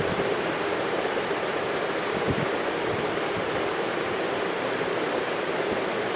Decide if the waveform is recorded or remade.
remade